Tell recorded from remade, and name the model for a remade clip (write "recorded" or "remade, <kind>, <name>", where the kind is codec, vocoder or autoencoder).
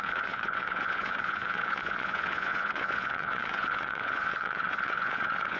remade, vocoder, Vocos